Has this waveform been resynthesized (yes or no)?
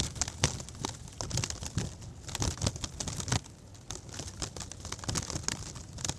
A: no